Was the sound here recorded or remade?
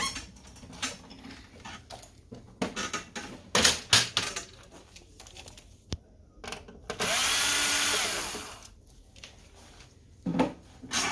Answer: recorded